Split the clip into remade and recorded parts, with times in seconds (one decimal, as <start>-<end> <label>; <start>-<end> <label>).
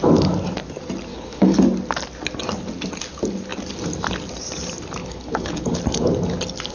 0.0-1.1 recorded; 1.1-1.6 remade; 1.6-5.0 recorded; 5.0-5.8 remade; 5.8-6.7 recorded